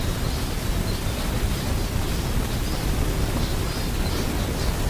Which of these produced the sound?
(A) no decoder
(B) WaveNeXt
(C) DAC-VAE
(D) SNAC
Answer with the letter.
A